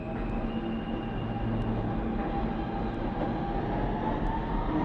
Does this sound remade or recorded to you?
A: recorded